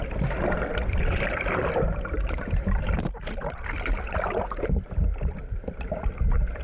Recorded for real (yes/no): no